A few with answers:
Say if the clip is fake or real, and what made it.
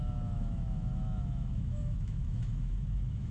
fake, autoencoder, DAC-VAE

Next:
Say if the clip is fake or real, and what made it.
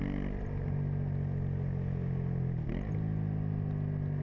real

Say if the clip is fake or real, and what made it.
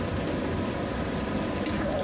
real